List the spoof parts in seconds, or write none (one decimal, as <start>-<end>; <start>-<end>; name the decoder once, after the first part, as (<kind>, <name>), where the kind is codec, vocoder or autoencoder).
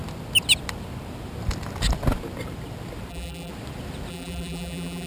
3.1-3.5 (vocoder, BigVGAN v2); 4.1-5.1